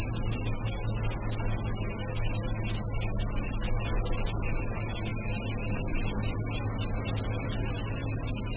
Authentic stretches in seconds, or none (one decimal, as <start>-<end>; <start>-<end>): 0.0-8.6